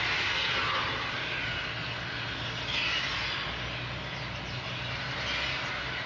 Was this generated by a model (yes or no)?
no